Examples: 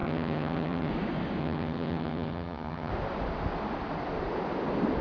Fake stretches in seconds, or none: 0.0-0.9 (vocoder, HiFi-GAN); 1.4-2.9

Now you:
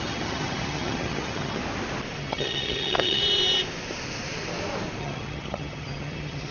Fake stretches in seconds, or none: 0.0-1.6 (vocoder, HiFi-GAN); 2.2-3.2; 5.0-6.5

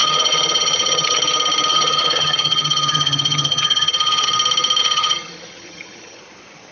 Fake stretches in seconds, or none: 0.0-1.2 (vocoder, HiFi-GAN); 1.7-4.3; 4.8-6.2

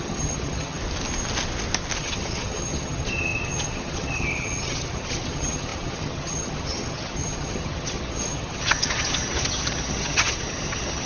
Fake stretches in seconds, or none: 0.0-0.8 (vocoder, HiFi-GAN); 2.0-11.1